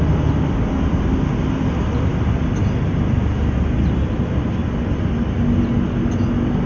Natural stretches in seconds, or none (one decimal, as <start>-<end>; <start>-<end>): 0.0-6.7